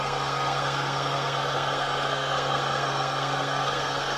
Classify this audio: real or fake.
fake